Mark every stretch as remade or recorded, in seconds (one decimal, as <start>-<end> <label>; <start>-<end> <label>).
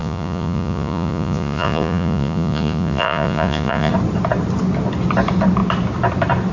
0.0-3.9 remade; 3.9-6.5 recorded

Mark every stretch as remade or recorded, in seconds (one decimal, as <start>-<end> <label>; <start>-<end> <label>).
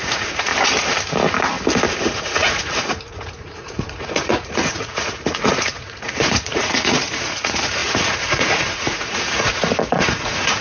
0.0-0.5 remade; 0.5-2.0 recorded; 2.0-10.6 remade